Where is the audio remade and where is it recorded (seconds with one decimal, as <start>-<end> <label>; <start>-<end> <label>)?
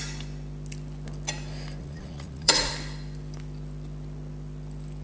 0.0-1.8 recorded; 1.8-2.7 remade; 2.7-5.0 recorded